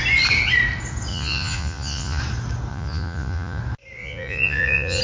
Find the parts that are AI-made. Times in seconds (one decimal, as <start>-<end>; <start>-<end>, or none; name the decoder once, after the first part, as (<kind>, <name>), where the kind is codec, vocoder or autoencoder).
1.1-2.2 (vocoder, Vocos); 2.7-3.6; 4.0-5.0